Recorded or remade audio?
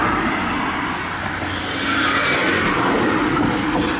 recorded